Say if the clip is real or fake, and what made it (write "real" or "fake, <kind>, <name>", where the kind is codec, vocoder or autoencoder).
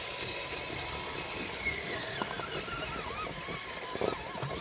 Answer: real